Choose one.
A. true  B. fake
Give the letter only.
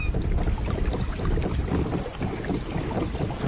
A